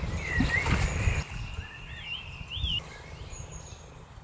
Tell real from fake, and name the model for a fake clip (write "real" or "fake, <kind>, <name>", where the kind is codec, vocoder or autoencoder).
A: real